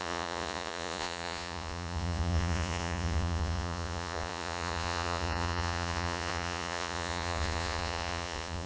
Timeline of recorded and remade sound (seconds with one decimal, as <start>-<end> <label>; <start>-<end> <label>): 0.0-8.7 remade